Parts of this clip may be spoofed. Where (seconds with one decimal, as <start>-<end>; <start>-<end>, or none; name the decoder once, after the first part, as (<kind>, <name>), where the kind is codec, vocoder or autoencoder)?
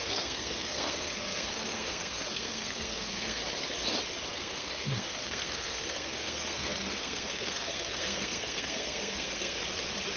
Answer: 0.0-3.4 (codec, SNAC); 4.3-9.6